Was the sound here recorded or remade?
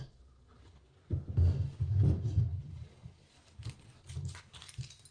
recorded